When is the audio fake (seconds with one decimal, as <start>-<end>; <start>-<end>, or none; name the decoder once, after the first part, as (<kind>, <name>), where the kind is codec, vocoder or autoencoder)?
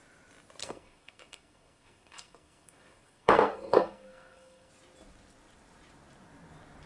0.6-4.7 (codec, SNAC)